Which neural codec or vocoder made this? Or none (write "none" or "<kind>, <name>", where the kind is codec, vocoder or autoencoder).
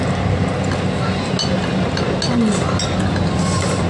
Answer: none